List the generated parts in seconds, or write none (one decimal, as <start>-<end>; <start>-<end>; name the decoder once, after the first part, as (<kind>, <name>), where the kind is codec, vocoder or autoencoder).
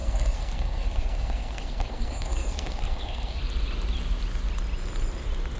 0.0-3.4 (codec, SNAC)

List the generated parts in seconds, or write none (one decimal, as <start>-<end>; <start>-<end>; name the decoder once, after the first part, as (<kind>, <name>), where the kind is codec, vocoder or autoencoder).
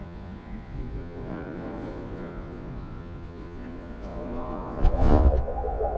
0.0-6.0 (vocoder, Vocos)